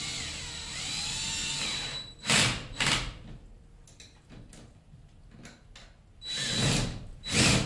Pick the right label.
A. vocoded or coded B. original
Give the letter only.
B